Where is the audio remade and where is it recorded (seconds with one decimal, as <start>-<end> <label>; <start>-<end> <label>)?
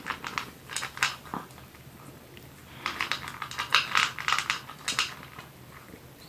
0.0-6.3 recorded